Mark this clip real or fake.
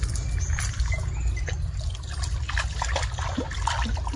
real